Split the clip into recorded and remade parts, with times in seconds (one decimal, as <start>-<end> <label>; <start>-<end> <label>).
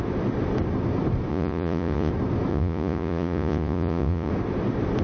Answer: 0.0-1.3 recorded; 1.3-2.1 remade; 2.1-2.5 recorded; 2.5-4.3 remade; 4.3-5.0 recorded